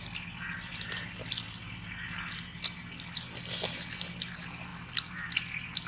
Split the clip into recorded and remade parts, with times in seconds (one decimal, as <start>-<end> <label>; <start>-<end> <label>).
0.0-5.9 recorded